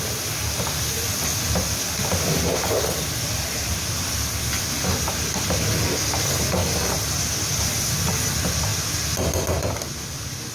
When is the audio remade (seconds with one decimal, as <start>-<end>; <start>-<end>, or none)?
none